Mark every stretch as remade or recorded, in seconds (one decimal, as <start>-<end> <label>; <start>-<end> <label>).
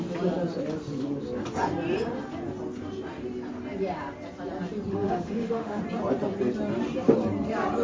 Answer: 0.0-4.9 recorded; 4.9-5.8 remade; 5.8-7.8 recorded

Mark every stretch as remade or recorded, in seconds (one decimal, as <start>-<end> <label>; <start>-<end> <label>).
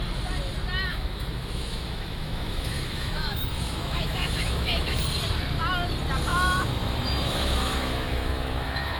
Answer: 0.0-0.9 recorded; 0.9-5.0 remade; 5.0-6.3 recorded; 6.3-9.0 remade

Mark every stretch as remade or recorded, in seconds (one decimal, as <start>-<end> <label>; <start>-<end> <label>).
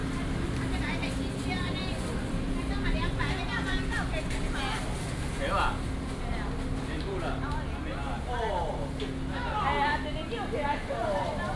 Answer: 0.0-11.6 recorded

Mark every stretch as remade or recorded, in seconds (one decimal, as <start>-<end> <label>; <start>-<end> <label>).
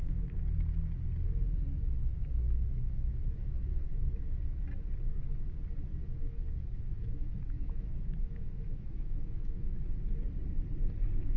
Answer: 0.0-2.0 recorded; 2.0-4.3 remade; 4.3-6.1 recorded; 6.1-9.8 remade; 9.8-11.4 recorded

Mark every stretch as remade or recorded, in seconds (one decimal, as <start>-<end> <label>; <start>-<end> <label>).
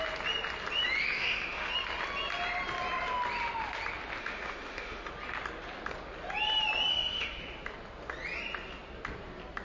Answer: 0.0-1.0 recorded; 1.0-1.7 remade; 1.7-4.2 recorded; 4.2-5.1 remade; 5.1-6.9 recorded; 6.9-7.4 remade; 7.4-9.6 recorded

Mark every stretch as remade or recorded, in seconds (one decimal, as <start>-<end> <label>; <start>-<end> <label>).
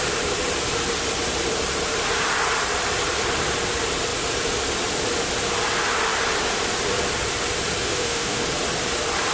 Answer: 0.0-7.8 recorded; 7.8-8.4 remade; 8.4-9.3 recorded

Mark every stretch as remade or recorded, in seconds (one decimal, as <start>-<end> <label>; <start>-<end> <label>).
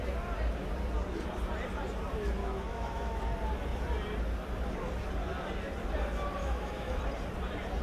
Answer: 0.0-2.4 recorded; 2.4-3.2 remade; 3.2-6.4 recorded; 6.4-7.0 remade; 7.0-7.8 recorded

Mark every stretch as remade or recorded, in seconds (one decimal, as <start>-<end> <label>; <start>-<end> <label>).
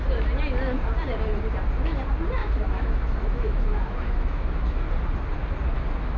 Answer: 0.0-2.4 recorded; 2.4-4.8 remade; 4.8-6.2 recorded